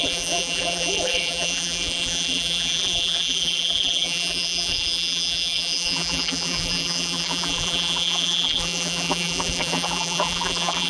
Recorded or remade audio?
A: remade